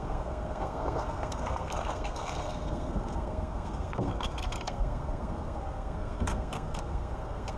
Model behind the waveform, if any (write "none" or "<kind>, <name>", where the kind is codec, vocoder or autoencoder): codec, SNAC